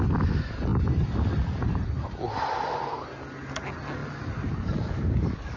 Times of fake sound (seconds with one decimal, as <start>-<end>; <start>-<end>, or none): none